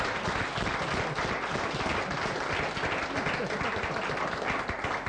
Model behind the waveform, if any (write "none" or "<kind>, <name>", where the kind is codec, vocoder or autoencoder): none